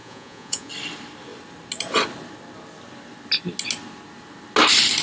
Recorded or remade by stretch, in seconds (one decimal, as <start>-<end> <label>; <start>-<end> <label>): 0.0-0.7 remade; 0.7-5.0 recorded